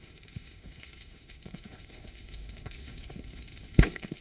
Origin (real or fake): fake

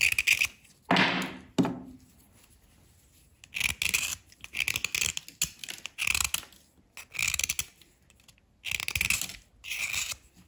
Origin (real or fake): real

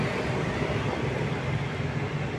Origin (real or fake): real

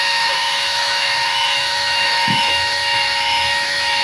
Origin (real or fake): fake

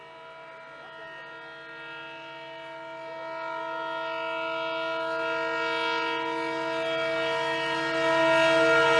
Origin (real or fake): real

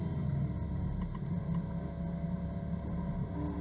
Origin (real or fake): real